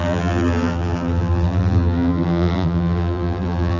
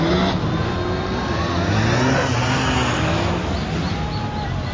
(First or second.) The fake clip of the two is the first